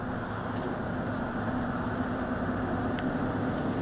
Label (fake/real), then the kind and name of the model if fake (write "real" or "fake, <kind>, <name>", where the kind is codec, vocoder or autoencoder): real